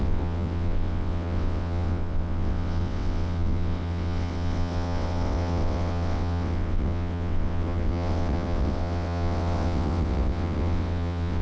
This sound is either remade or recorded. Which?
remade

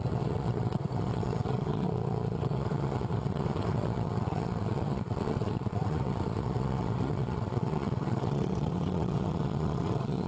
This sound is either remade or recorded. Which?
remade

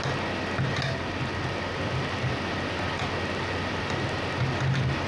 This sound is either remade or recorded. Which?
recorded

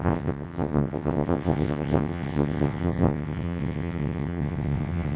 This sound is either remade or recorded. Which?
remade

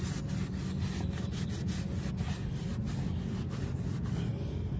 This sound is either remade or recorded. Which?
recorded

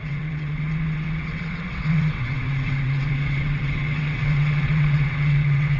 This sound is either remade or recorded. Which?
remade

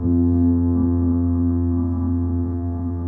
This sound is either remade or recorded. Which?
remade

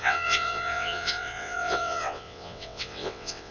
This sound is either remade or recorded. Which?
remade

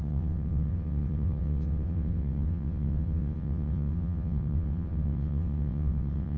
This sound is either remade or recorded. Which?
remade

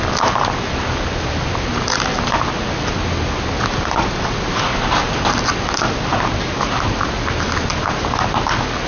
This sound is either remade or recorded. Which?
recorded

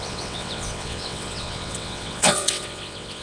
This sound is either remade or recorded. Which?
remade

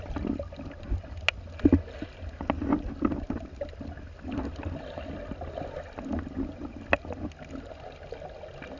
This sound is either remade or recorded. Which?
recorded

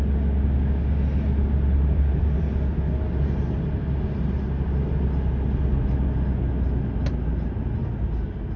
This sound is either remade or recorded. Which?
recorded